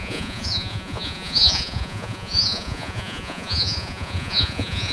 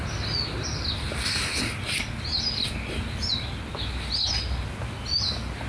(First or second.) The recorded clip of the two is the second